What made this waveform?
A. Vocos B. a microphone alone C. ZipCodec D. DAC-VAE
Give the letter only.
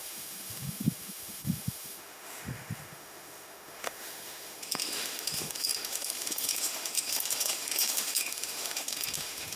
D